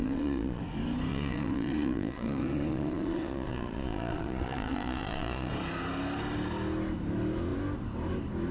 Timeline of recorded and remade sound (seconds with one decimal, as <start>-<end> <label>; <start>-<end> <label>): 0.0-0.6 remade; 0.6-1.1 recorded; 1.1-5.5 remade; 5.5-8.5 recorded